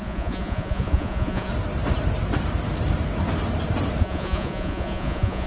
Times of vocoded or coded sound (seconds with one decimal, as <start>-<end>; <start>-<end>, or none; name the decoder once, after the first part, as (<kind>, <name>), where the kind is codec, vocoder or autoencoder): 0.0-1.5 (vocoder, Vocos); 4.0-5.5